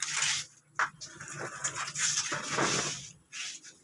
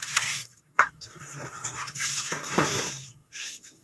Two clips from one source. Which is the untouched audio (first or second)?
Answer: first